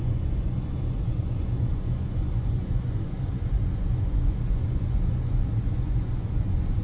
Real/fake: fake